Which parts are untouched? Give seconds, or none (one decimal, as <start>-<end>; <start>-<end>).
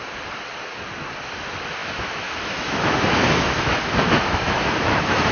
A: 0.0-1.8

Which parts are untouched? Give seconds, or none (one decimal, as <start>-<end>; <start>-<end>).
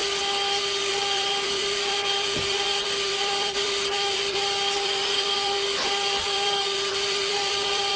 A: 0.0-0.8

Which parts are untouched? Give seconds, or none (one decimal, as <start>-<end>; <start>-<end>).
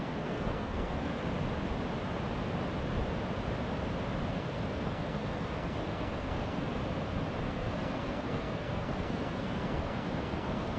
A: 1.1-4.3; 6.8-7.4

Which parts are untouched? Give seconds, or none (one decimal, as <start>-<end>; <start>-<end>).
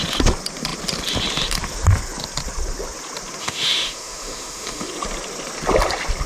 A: 0.0-3.4; 4.9-6.3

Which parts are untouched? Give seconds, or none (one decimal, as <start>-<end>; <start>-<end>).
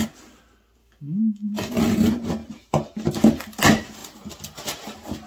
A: 0.0-0.8; 1.7-5.3